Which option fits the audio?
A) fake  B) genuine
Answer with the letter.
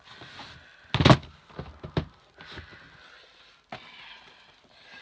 B